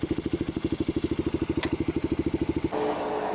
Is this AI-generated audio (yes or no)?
no